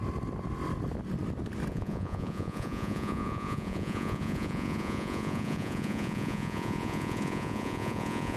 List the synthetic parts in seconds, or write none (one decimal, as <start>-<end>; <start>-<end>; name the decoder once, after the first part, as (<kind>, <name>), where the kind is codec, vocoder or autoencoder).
1.7-8.4 (vocoder, Vocos)